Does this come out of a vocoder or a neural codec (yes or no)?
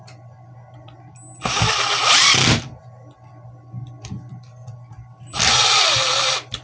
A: no